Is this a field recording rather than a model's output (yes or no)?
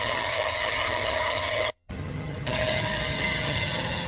no